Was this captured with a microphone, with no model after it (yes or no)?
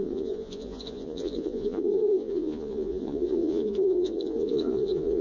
no